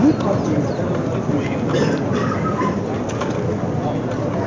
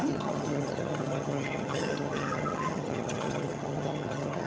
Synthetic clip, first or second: second